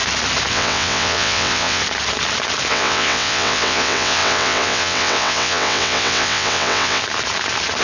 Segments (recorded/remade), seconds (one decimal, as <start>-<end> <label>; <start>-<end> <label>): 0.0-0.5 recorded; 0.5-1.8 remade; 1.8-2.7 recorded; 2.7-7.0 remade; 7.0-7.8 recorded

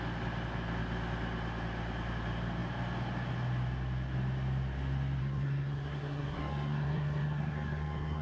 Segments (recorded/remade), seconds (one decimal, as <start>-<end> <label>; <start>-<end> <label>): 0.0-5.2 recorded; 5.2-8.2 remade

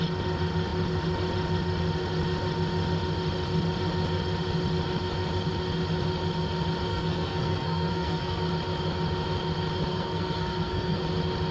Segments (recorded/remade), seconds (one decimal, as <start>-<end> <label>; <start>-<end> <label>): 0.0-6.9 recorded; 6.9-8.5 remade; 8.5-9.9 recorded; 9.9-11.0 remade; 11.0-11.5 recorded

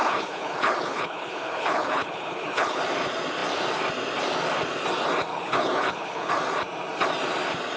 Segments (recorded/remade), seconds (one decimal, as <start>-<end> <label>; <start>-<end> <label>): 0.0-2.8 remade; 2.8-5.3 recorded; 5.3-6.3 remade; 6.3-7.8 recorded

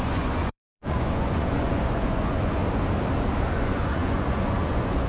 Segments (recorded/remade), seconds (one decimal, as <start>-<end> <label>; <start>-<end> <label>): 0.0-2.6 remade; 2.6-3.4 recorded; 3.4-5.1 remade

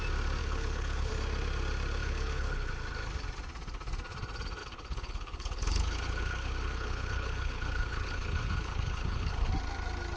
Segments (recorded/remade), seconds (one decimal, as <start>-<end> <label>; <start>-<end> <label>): 0.0-0.4 recorded; 0.4-1.1 remade; 1.1-2.0 recorded; 2.0-2.7 remade; 2.7-4.6 recorded; 4.6-9.5 remade; 9.5-10.2 recorded

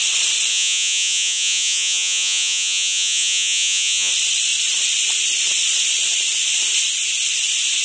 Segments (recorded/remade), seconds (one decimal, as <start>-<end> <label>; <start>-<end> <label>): 0.0-0.5 recorded; 0.5-4.1 remade; 4.1-7.8 recorded

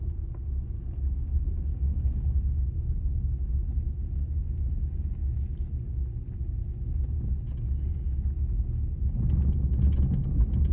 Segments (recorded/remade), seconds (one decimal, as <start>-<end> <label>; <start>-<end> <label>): 0.0-1.7 recorded; 1.7-2.8 remade; 2.8-10.7 recorded